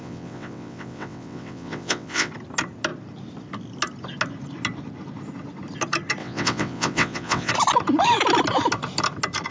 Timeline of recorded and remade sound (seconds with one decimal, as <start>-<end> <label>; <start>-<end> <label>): 0.0-2.3 remade; 2.3-6.2 recorded; 6.2-7.5 remade; 7.5-9.5 recorded